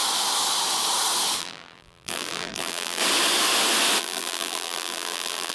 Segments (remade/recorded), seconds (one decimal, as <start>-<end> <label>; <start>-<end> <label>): 0.0-1.4 recorded; 1.4-3.0 remade; 3.0-4.0 recorded; 4.0-5.5 remade